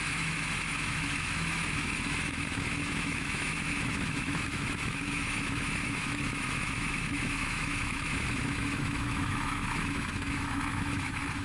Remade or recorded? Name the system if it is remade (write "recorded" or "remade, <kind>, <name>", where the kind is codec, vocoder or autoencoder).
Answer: remade, autoencoder, DAC-VAE